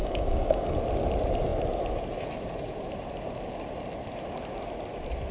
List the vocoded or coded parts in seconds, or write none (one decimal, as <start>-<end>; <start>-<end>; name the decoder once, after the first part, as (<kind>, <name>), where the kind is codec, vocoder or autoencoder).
0.0-0.8 (codec, DAC)